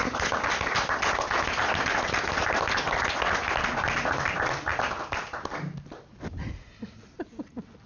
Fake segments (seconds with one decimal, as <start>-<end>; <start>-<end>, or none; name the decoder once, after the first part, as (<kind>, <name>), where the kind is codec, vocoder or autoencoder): none